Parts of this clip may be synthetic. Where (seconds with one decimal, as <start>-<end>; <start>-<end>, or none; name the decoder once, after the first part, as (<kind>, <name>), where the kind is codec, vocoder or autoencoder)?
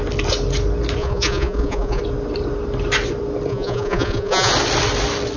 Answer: 1.0-2.0 (vocoder, Vocos); 3.5-4.5